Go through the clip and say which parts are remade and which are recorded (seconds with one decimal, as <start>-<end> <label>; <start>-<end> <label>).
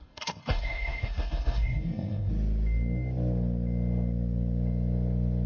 0.0-2.3 remade; 2.3-5.5 recorded